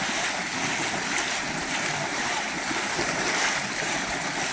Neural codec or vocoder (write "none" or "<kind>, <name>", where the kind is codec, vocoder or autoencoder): none